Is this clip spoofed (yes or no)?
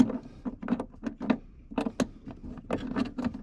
no